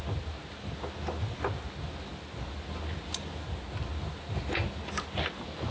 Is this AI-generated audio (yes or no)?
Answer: no